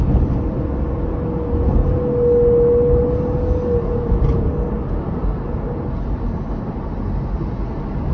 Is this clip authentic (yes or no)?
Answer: yes